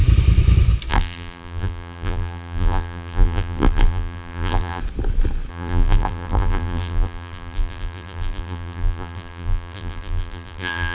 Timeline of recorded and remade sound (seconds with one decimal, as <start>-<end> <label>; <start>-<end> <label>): 0.0-0.9 recorded; 0.9-4.8 remade; 4.8-5.5 recorded; 5.5-10.9 remade